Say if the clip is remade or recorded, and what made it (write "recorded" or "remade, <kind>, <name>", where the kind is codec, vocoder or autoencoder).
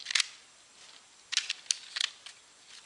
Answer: recorded